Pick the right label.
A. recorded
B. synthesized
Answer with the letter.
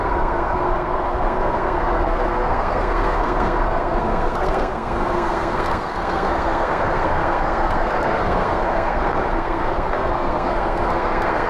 B